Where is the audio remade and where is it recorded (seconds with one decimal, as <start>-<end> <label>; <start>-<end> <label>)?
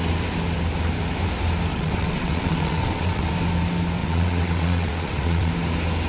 0.0-1.7 recorded; 1.7-3.3 remade; 3.3-4.0 recorded; 4.0-5.5 remade; 5.5-6.1 recorded